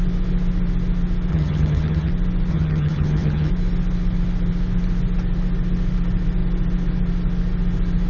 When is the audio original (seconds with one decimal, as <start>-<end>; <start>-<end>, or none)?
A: 0.0-1.3; 2.1-2.5; 3.5-8.1